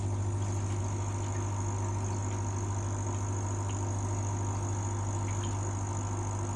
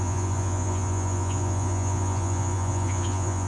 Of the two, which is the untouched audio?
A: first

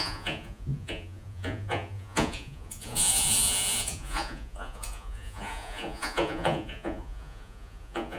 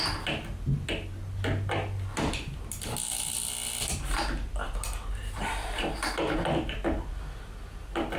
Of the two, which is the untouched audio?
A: second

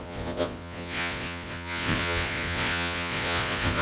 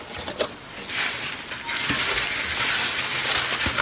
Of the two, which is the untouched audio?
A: second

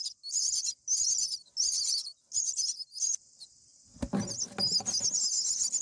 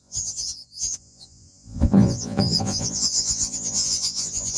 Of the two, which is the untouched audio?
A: first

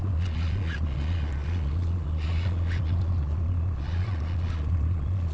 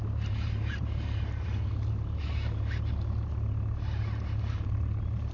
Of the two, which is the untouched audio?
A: second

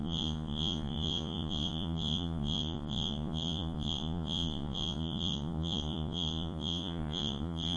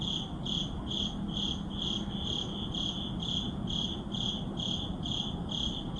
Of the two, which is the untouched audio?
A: second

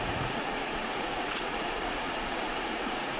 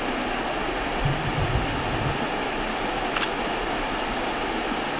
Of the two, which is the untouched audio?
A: second